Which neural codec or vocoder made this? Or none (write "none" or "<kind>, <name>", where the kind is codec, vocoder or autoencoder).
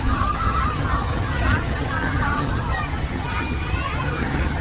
vocoder, HiFi-GAN